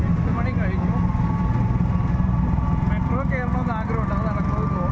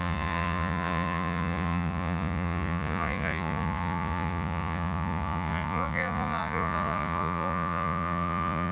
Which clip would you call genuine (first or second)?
first